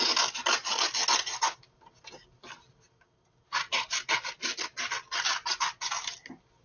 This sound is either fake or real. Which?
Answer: real